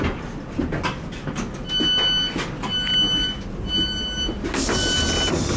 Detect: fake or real real